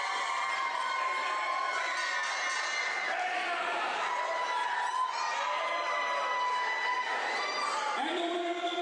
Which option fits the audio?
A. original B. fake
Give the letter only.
A